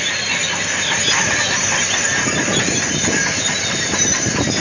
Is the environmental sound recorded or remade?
recorded